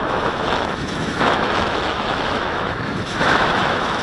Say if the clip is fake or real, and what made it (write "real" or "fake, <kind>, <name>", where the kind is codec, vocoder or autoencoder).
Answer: fake, autoencoder, DAC-VAE